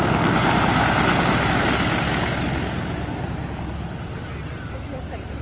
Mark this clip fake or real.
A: real